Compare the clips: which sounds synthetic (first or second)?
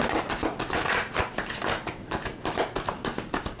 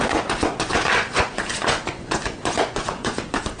second